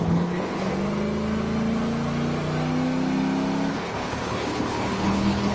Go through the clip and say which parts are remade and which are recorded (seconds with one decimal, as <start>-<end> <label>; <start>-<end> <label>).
0.0-0.7 remade; 0.7-3.7 recorded; 3.7-5.5 remade